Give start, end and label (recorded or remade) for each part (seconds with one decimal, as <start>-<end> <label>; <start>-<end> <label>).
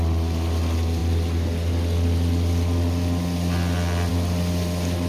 0.0-5.1 recorded